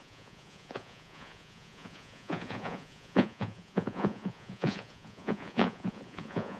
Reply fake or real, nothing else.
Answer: fake